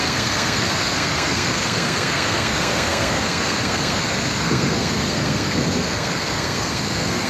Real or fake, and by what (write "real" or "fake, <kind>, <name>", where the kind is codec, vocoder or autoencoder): fake, codec, SNAC